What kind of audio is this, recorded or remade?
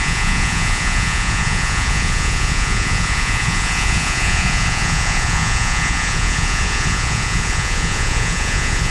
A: remade